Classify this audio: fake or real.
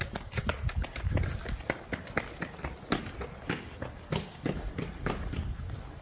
real